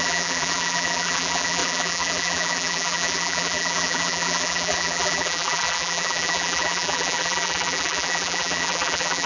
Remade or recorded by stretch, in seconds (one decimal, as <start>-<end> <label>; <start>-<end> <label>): 0.0-9.3 remade